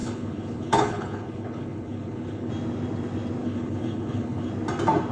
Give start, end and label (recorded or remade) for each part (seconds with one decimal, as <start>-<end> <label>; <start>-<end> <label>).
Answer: 0.0-2.5 remade; 2.5-3.4 recorded; 3.4-4.5 remade; 4.5-5.1 recorded